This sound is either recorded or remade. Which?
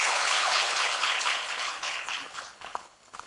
remade